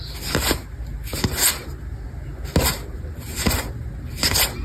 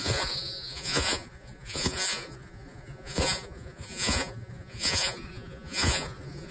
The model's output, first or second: second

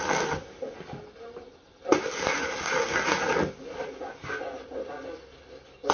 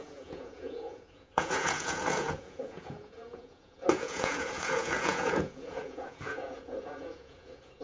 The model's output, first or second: second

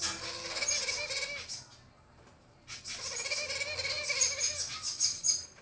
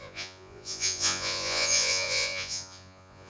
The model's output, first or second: second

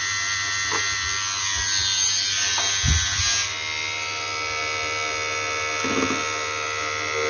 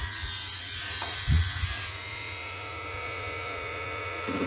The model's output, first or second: second